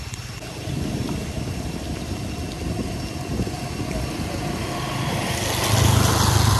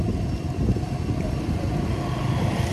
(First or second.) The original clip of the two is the first